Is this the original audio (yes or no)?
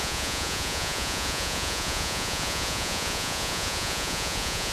no